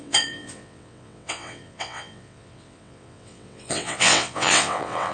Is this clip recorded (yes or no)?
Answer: no